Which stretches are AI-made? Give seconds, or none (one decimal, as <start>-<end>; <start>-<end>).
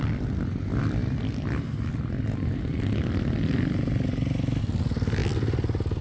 none